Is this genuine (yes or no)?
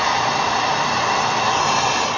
yes